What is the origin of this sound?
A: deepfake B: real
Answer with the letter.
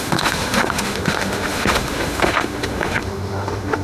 A